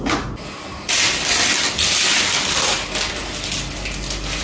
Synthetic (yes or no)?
no